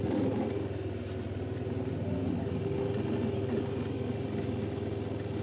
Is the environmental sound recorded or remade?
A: recorded